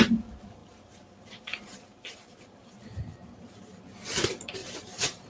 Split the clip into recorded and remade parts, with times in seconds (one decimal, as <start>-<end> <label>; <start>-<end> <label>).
0.0-0.6 recorded; 0.6-3.8 remade; 3.8-4.6 recorded; 4.6-5.3 remade